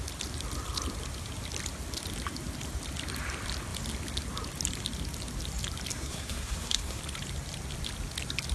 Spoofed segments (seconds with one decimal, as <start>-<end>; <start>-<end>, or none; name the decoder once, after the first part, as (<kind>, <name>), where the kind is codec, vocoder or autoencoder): 5.9-7.0 (codec, SNAC)